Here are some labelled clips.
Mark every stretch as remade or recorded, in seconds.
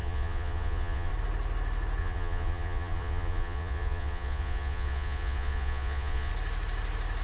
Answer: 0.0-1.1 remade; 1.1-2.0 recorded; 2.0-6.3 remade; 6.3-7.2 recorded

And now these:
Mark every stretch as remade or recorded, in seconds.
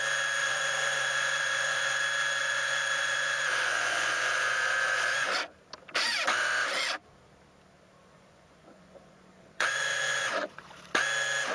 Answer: 0.0-0.4 recorded; 0.4-2.0 remade; 2.0-2.4 recorded; 2.4-5.3 remade; 5.3-8.0 recorded; 8.0-10.7 remade; 10.7-11.5 recorded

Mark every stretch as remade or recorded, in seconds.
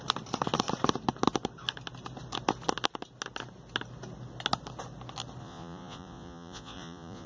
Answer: 0.0-5.4 recorded; 5.4-7.3 remade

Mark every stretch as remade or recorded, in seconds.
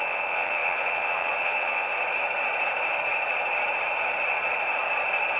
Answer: 0.0-1.9 remade; 1.9-5.4 recorded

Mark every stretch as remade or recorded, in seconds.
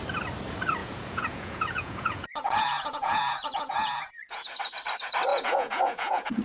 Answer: 0.0-0.8 recorded; 0.8-4.6 remade; 4.6-5.3 recorded; 5.3-6.4 remade